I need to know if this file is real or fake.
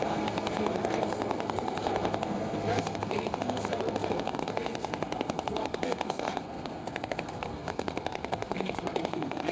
fake